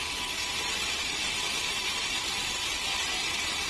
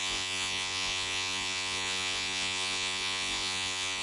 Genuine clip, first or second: first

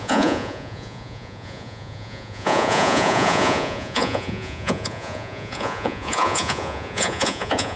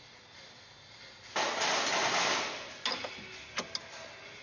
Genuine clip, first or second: second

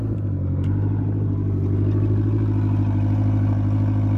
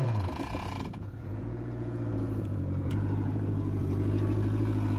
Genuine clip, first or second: first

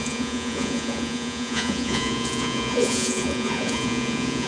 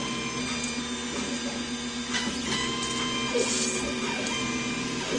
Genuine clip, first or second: second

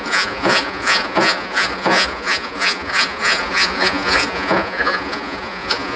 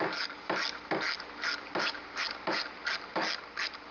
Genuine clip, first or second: second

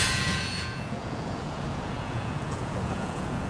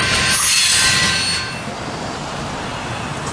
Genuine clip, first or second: second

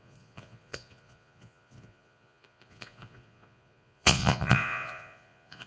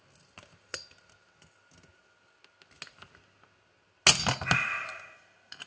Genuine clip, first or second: second